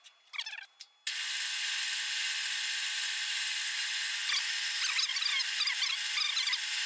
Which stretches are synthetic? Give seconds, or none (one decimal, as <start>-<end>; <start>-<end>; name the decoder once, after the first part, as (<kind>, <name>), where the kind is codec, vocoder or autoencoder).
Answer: none